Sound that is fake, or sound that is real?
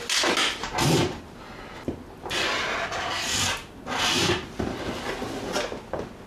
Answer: real